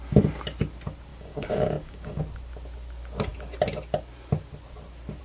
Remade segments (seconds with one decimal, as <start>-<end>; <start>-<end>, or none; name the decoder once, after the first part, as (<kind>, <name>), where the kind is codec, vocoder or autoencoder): 1.1-2.2 (codec, DAC)